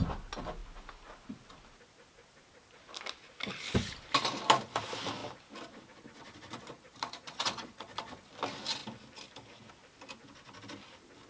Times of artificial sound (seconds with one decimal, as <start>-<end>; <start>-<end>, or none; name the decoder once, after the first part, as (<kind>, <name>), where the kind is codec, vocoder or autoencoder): 6.2-8.3 (vocoder, Vocos)

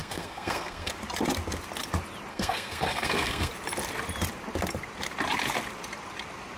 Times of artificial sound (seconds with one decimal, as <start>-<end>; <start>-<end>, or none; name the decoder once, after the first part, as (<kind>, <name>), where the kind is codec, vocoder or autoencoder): 0.0-0.9 (codec, SNAC); 2.3-3.5

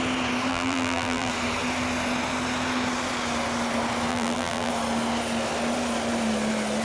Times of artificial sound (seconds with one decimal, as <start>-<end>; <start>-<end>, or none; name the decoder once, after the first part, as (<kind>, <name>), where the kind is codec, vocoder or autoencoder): 0.5-1.3 (vocoder, BigVGAN v2); 4.1-4.7

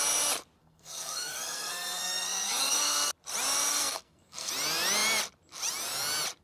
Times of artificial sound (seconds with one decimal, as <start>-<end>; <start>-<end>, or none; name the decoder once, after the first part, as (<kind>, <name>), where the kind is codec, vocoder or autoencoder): 0.6-3.1 (codec, SNAC); 3.7-4.5

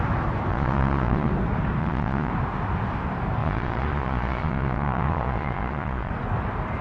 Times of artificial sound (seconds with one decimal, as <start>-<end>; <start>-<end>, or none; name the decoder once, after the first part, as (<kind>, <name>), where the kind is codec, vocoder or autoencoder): 0.5-1.3 (vocoder, Vocos); 1.8-2.3; 3.4-6.1